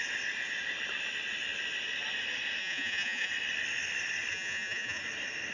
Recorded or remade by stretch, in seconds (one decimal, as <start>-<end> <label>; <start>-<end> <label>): 0.0-2.6 recorded; 2.6-3.3 remade; 3.3-4.3 recorded; 4.3-5.0 remade; 5.0-5.5 recorded